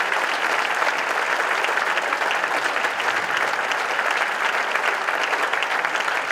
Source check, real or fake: real